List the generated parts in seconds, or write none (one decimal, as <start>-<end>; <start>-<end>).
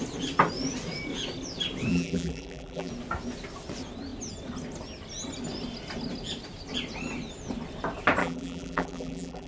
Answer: 1.9-2.9; 8.2-9.5